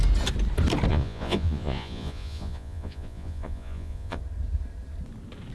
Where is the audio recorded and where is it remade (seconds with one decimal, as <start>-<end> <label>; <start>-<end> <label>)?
0.0-0.9 recorded; 0.9-4.2 remade; 4.2-5.5 recorded